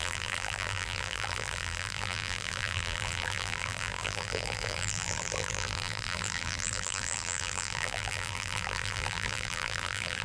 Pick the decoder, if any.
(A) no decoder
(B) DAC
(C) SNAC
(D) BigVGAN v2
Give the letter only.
D